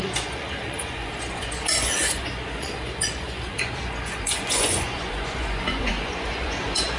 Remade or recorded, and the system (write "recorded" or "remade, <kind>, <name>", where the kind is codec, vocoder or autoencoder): remade, vocoder, Vocos